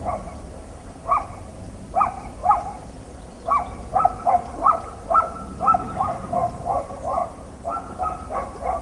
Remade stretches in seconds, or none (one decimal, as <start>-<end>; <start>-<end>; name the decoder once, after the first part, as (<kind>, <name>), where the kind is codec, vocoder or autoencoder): 0.0-2.4 (vocoder, BigVGAN v2); 4.3-7.2; 7.9-8.8